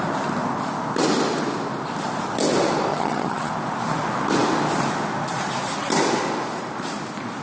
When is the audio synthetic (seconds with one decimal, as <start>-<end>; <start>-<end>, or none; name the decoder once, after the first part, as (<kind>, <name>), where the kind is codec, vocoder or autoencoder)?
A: 2.9-3.5 (vocoder, HiFi-GAN)